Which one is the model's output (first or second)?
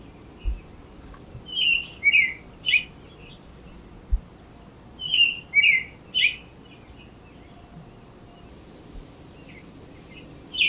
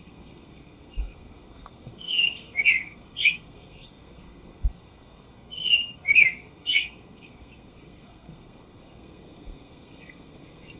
second